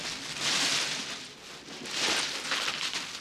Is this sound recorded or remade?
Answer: recorded